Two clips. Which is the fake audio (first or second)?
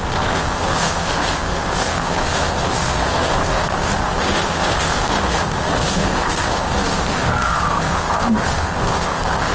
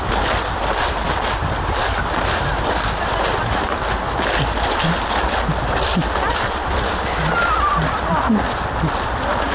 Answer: first